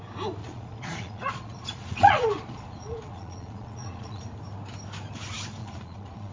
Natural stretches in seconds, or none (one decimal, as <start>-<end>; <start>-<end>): 0.0-0.4; 4.2-5.6